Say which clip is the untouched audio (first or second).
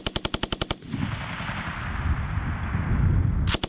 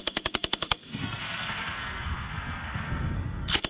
first